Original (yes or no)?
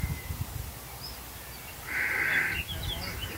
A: yes